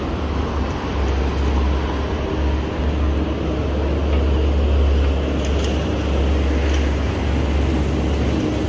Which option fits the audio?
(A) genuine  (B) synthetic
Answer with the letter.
A